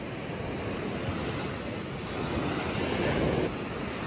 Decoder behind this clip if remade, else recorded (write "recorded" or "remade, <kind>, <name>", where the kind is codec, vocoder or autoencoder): recorded